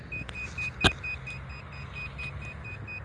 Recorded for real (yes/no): yes